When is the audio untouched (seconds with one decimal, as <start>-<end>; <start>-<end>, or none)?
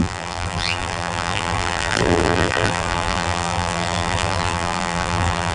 none